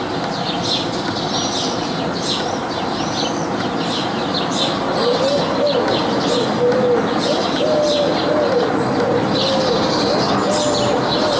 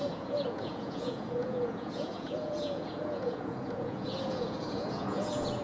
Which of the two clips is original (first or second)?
first